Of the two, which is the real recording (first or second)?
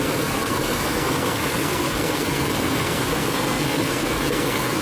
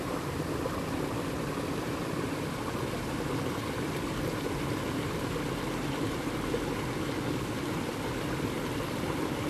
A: second